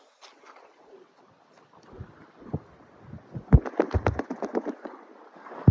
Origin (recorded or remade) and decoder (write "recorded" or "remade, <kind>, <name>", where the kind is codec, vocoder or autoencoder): recorded